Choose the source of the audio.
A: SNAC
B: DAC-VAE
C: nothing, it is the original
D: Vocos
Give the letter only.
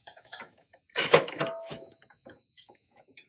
B